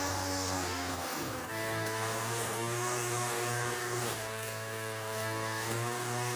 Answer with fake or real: fake